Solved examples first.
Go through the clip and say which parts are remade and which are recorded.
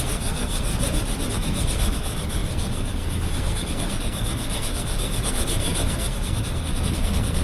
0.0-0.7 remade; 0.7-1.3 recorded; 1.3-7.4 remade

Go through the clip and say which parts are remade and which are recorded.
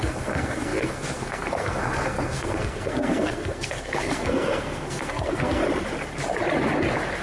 0.0-5.6 remade; 5.6-7.2 recorded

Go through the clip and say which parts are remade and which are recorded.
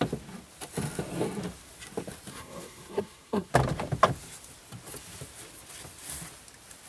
0.0-2.3 recorded; 2.3-3.5 remade; 3.5-6.9 recorded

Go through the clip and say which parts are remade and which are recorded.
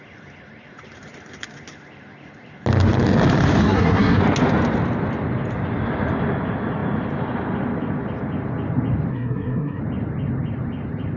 0.0-3.6 recorded; 3.6-4.2 remade; 4.2-9.1 recorded; 9.1-9.8 remade; 9.8-11.2 recorded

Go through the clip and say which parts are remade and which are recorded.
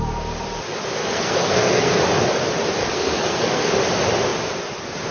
0.0-1.0 recorded; 1.0-2.0 remade; 2.0-2.8 recorded; 2.8-3.7 remade; 3.7-5.1 recorded